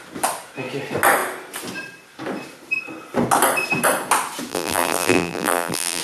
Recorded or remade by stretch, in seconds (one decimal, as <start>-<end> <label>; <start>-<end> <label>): 0.0-4.5 recorded; 4.5-6.0 remade